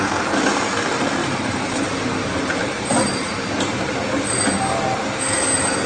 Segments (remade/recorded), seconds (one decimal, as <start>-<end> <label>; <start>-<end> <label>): 0.0-1.2 recorded; 1.2-3.5 remade; 3.5-5.9 recorded